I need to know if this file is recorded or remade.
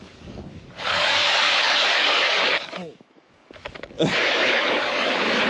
remade